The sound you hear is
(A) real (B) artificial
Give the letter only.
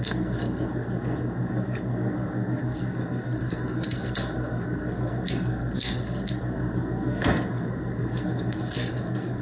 B